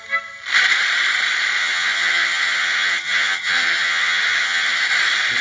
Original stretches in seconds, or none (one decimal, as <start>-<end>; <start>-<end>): 0.0-1.6; 4.8-5.4